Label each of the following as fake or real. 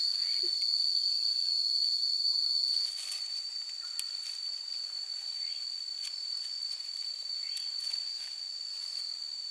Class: real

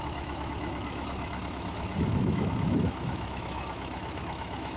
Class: fake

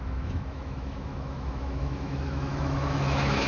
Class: fake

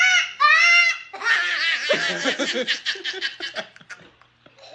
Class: real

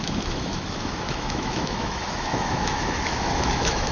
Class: fake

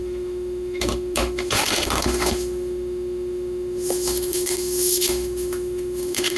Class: fake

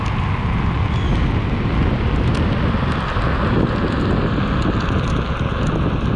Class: real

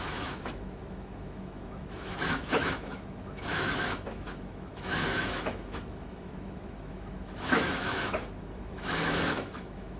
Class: fake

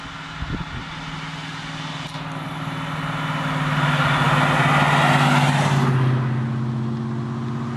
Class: real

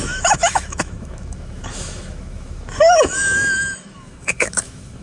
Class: fake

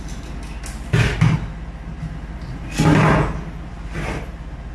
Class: real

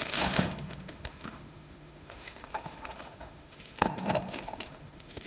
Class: fake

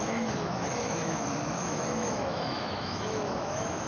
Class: fake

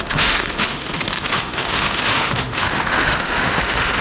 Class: fake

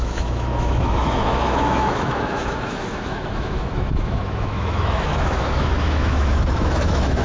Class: fake